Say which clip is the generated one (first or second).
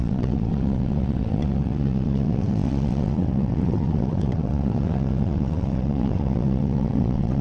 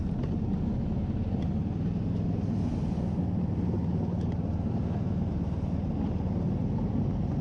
first